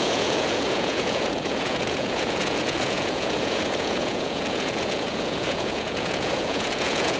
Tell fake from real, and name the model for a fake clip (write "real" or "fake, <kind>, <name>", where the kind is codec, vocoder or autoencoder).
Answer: fake, vocoder, Vocos